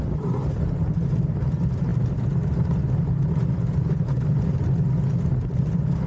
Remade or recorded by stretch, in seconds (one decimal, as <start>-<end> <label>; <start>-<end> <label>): 0.0-6.1 recorded